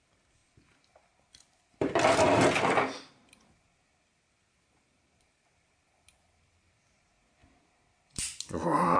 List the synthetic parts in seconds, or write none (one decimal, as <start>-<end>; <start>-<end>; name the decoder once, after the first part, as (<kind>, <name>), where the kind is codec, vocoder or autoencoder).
none